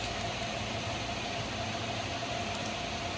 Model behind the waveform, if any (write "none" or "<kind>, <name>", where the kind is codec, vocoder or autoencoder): none